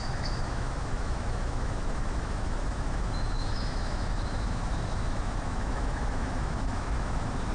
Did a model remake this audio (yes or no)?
yes